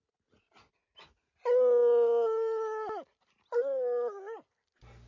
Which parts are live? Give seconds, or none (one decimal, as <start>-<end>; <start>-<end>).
0.0-5.1